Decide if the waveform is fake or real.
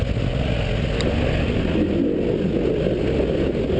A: real